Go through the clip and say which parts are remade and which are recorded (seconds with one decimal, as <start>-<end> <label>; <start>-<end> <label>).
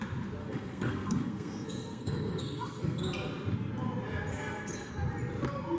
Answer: 0.0-0.4 recorded; 0.4-3.0 remade; 3.0-4.3 recorded; 4.3-4.9 remade; 4.9-5.8 recorded